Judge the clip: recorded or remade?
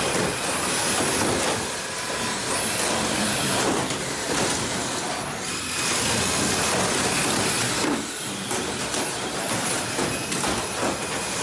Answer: recorded